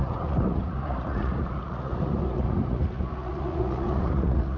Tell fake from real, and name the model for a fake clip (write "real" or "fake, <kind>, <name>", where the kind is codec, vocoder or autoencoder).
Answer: fake, vocoder, Vocos